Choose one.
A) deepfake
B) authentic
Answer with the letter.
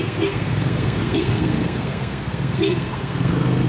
A